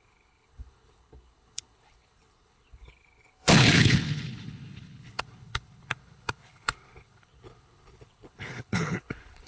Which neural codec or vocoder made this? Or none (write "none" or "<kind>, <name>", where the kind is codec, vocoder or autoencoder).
codec, HILCodec